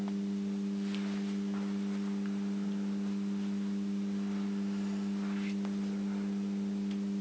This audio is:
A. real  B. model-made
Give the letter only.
A